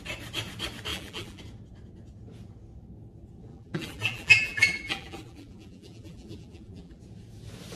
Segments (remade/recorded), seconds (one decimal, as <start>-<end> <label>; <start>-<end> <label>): 0.0-0.9 recorded; 0.9-1.4 remade; 1.4-3.5 recorded; 3.5-7.0 remade; 7.0-7.8 recorded